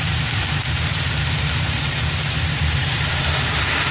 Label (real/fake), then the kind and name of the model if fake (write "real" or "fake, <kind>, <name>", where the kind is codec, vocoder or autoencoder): fake, vocoder, BigVGAN v2